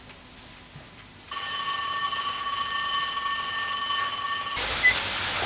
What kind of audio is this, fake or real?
real